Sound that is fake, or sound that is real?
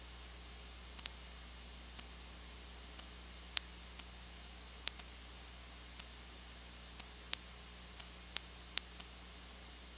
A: real